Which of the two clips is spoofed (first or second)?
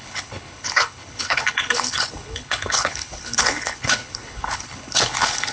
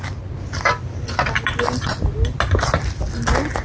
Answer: first